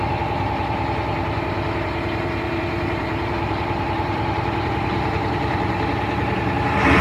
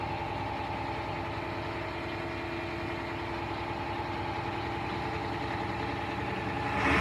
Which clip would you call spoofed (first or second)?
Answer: first